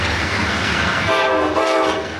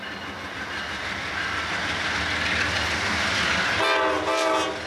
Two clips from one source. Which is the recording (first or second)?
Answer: second